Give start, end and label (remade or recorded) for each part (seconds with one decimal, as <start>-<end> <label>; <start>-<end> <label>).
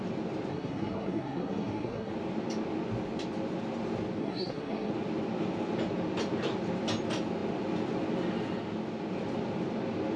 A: 0.0-0.5 recorded; 0.5-2.1 remade; 2.1-4.2 recorded; 4.2-4.9 remade; 4.9-10.2 recorded